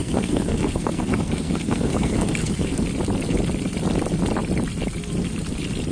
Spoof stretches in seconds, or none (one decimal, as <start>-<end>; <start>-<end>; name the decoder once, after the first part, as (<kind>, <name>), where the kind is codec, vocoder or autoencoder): 0.0-2.8 (codec, SNAC)